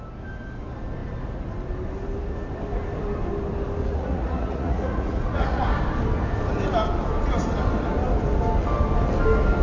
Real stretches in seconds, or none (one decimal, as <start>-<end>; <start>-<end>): 0.0-3.8; 5.6-9.6